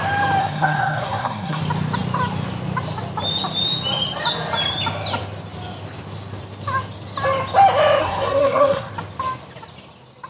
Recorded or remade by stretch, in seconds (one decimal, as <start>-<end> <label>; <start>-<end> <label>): 0.0-0.4 recorded; 0.4-1.6 remade; 1.6-8.0 recorded; 8.0-8.9 remade; 8.9-10.3 recorded